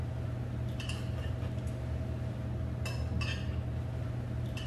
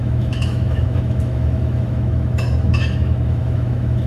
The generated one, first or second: second